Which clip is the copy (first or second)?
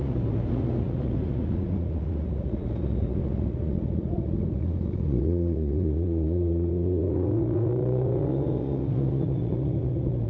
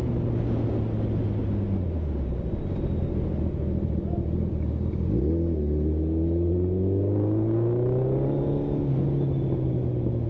first